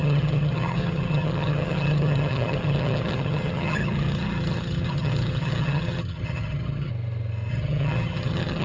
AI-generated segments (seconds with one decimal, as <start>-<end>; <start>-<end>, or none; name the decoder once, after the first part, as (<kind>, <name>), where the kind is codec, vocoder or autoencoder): 0.0-6.9 (vocoder, HiFi-GAN); 7.5-8.6